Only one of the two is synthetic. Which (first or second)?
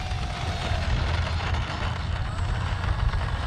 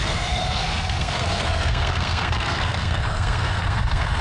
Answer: second